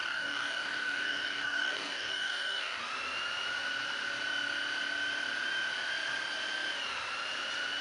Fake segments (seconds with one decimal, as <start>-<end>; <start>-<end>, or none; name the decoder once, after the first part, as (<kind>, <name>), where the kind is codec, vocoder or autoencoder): 0.0-2.8 (codec, DAC)